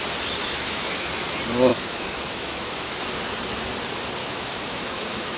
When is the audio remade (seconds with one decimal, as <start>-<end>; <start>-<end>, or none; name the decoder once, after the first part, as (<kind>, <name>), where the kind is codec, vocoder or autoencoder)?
0.4-1.1 (autoencoder, DAC-VAE); 1.7-3.0; 4.2-5.4